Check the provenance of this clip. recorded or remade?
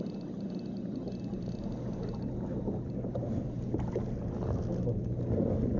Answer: recorded